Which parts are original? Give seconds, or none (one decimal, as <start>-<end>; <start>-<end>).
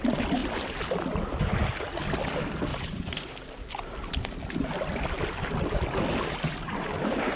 0.0-2.7; 3.3-7.4